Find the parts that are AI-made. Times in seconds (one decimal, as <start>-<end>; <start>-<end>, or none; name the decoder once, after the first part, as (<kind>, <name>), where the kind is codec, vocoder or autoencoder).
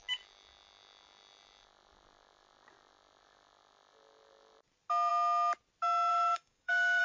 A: 6.1-7.0 (codec, DAC)